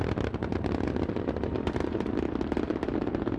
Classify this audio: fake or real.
real